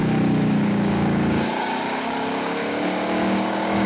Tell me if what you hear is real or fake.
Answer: fake